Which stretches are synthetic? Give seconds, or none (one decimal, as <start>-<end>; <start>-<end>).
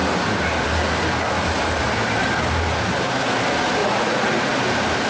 3.8-4.4